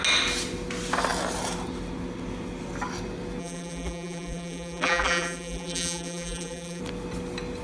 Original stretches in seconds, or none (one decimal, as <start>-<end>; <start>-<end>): 0.0-3.4; 6.8-7.6